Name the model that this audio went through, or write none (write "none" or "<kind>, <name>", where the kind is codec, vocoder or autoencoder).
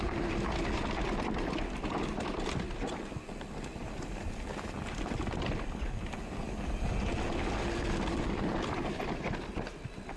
none